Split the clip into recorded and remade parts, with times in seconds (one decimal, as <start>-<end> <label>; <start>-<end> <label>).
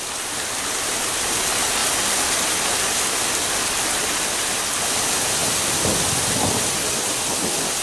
0.0-7.8 recorded